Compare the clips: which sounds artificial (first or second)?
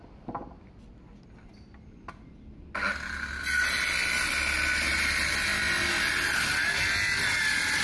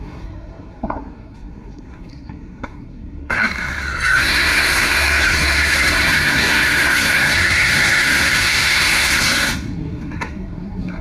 second